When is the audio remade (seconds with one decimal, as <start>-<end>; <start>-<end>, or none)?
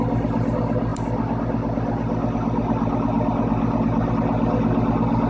0.9-4.1